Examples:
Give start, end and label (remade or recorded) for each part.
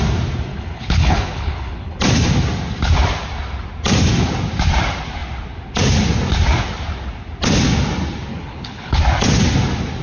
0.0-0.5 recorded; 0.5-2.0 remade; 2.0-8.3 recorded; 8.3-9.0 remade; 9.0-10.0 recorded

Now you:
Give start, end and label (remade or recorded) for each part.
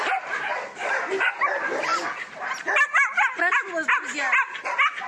0.0-5.1 recorded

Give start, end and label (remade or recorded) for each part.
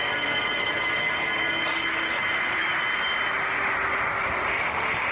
0.0-5.1 recorded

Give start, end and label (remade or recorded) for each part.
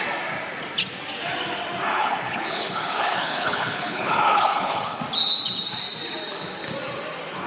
0.0-1.9 recorded; 1.9-5.0 remade; 5.0-7.5 recorded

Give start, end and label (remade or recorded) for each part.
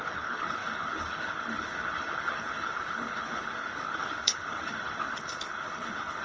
0.0-6.2 remade